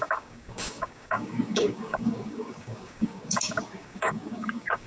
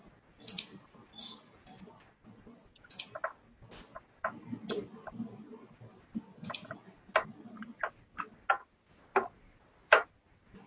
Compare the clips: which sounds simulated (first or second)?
first